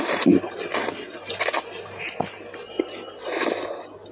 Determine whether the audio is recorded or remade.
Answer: recorded